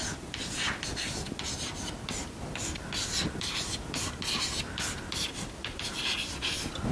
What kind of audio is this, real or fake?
real